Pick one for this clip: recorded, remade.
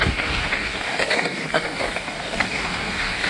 remade